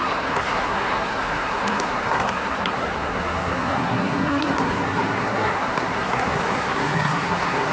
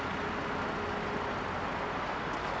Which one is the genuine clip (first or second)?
second